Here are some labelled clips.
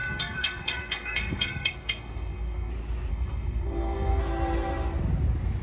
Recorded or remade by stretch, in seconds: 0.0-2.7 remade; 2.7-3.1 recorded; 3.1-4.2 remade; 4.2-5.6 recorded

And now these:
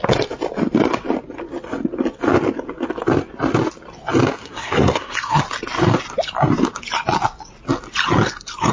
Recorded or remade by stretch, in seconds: 0.0-4.4 recorded; 4.4-5.4 remade; 5.4-8.7 recorded

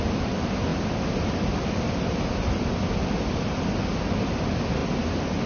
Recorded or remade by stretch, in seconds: 0.0-5.5 recorded

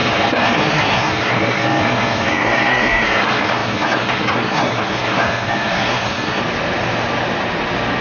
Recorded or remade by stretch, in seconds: 0.0-6.4 remade; 6.4-8.0 recorded

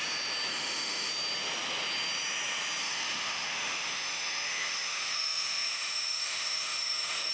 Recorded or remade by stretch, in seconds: 0.0-0.5 recorded; 0.5-1.1 remade; 1.1-2.8 recorded; 2.8-7.3 remade

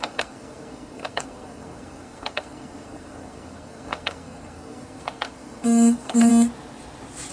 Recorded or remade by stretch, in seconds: 0.0-6.3 remade; 6.3-7.3 recorded

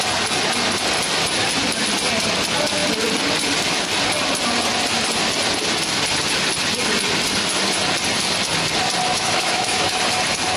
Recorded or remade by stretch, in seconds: 0.0-9.1 recorded; 9.1-10.0 remade; 10.0-10.6 recorded